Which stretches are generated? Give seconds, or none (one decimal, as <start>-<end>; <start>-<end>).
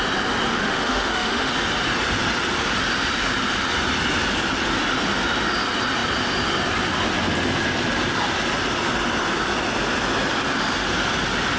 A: 0.5-1.5